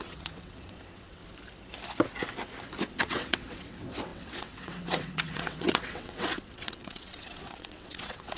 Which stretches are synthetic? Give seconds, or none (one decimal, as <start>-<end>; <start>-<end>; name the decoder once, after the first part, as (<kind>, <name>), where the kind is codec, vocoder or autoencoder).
0.0-1.2 (vocoder, WaveNeXt); 3.0-8.4